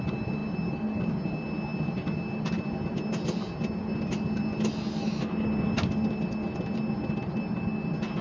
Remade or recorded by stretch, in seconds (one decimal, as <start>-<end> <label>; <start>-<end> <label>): 0.0-8.2 recorded